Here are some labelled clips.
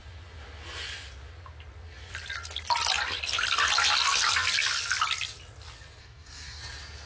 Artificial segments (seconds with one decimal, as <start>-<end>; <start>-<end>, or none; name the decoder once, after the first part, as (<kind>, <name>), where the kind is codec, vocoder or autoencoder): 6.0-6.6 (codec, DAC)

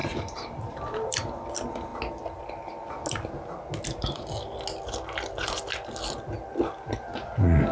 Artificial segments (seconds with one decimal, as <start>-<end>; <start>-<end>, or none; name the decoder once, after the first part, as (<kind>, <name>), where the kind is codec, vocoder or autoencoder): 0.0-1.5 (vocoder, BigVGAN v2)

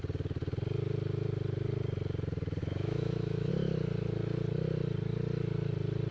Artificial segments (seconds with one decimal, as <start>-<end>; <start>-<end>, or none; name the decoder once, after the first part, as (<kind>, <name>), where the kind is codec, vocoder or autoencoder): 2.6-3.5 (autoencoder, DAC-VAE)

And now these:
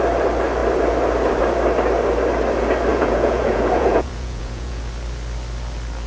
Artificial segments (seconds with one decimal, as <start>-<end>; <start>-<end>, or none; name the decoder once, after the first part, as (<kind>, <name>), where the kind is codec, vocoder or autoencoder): 2.9-4.8 (vocoder, Vocos)

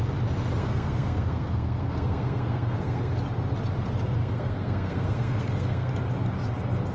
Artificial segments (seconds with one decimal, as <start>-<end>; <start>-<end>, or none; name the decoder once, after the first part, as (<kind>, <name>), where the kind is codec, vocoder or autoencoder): 0.6-3.1 (codec, SNAC); 4.2-5.9

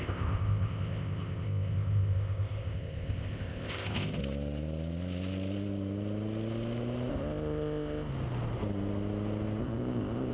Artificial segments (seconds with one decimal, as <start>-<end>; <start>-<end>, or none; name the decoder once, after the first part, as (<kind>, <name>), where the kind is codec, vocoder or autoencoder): 0.0-4.2 (codec, ZipCodec); 7.1-8.1; 9.6-10.3